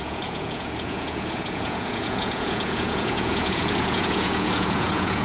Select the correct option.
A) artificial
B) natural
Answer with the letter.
A